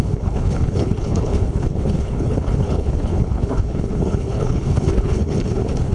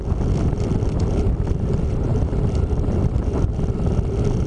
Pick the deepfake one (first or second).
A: first